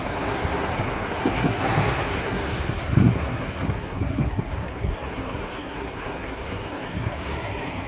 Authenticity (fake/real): fake